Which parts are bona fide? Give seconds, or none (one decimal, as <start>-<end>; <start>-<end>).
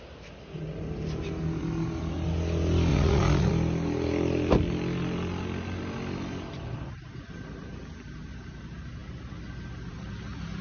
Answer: 0.0-2.9; 3.5-10.6